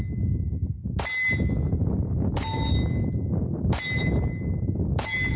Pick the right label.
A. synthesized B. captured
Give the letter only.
B